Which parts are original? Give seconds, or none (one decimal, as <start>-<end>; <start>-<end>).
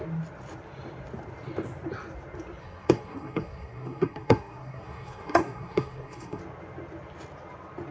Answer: 0.0-2.6; 6.4-7.9